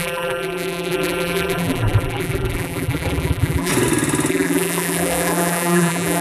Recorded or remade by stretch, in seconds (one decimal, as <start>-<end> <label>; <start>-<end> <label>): 0.0-3.7 remade; 3.7-4.3 recorded; 4.3-6.2 remade